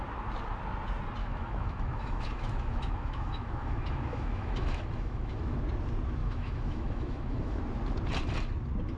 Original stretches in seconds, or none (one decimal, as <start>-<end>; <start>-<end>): 0.0-1.2; 5.6-6.2; 7.6-9.0